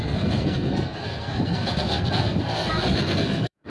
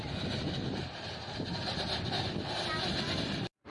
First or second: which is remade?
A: first